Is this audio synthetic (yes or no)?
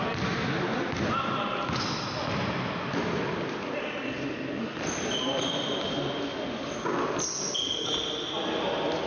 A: no